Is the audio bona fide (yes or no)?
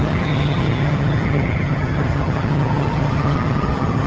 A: no